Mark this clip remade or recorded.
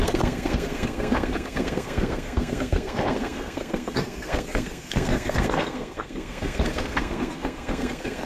remade